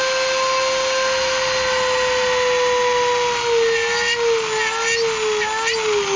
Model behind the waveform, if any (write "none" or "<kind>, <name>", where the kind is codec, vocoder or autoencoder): none